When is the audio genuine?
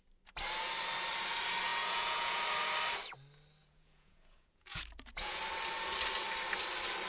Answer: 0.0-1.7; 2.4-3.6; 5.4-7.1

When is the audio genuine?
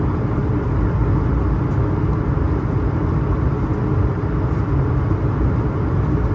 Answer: 0.0-6.3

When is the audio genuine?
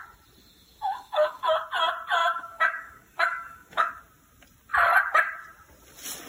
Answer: 0.0-0.4; 1.5-2.2; 3.9-6.3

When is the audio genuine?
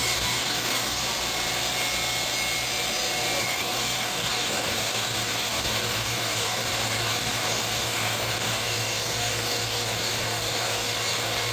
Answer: 1.0-3.4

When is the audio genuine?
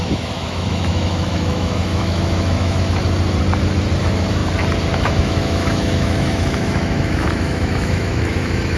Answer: 3.0-4.0; 4.4-5.0